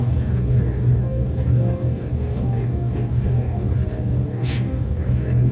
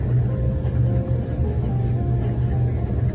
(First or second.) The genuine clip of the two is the second